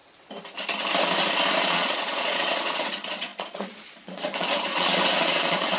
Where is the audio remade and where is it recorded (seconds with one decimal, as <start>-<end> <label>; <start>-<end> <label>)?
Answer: 0.0-1.7 recorded; 1.7-5.8 remade